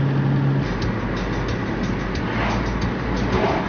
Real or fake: real